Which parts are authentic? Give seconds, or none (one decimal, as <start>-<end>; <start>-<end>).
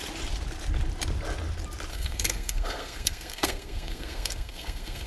0.0-1.9